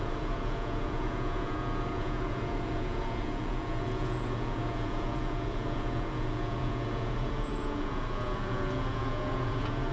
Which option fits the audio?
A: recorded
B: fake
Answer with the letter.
B